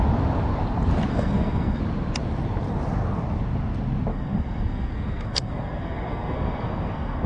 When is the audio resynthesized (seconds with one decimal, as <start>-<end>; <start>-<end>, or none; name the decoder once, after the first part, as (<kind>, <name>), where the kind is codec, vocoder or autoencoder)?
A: 1.1-1.8 (codec, SNAC); 4.1-7.3